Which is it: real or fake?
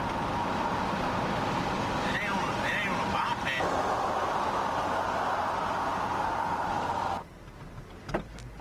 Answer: real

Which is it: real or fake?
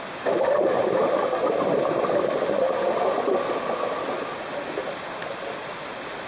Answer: real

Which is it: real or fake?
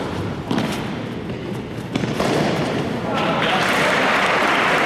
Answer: fake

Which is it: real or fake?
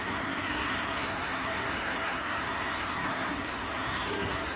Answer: fake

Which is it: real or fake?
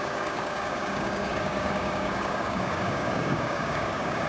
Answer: fake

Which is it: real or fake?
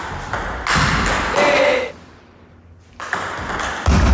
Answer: real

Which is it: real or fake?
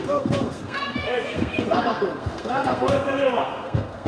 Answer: fake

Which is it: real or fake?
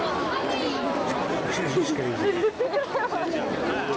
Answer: real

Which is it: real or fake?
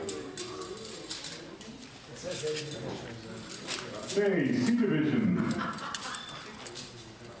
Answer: real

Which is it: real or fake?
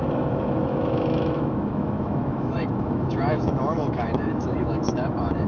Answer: fake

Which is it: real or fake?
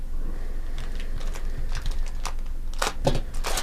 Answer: real